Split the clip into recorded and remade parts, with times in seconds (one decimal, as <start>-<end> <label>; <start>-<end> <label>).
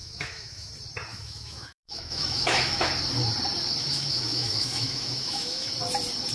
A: 0.0-0.7 remade; 0.7-1.1 recorded; 1.1-2.9 remade; 2.9-3.8 recorded; 3.8-5.7 remade; 5.7-6.3 recorded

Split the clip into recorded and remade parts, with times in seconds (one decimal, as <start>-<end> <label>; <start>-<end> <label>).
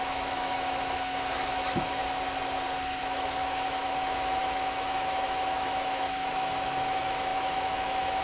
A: 0.0-2.0 remade; 2.0-3.0 recorded; 3.0-8.2 remade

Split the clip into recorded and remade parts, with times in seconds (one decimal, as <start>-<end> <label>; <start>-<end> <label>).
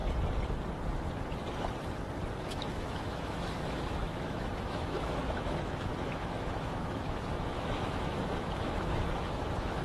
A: 0.0-2.4 recorded; 2.4-9.8 remade